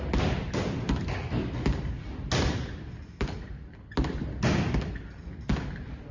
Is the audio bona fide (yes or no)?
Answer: yes